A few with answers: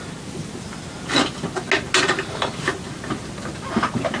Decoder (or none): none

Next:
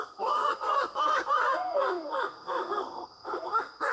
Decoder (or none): codec, SNAC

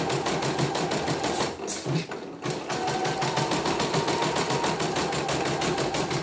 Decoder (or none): none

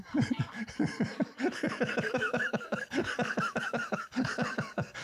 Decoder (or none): codec, DAC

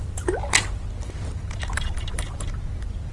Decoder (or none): none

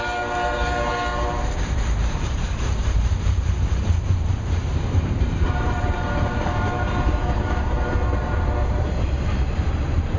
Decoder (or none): vocoder, BigVGAN v2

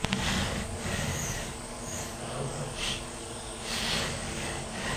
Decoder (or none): codec, DAC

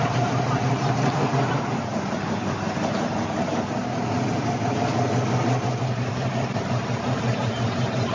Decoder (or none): vocoder, BigVGAN v2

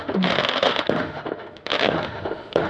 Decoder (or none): autoencoder, DAC-VAE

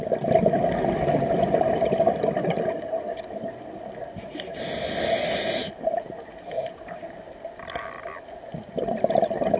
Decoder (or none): none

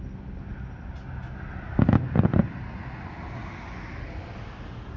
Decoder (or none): none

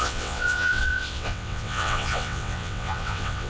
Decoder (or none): vocoder, WaveNeXt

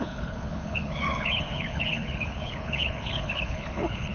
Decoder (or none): codec, HILCodec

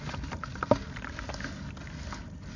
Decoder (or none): none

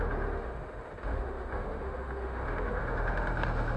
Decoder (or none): autoencoder, DAC-VAE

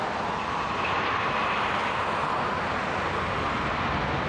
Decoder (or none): none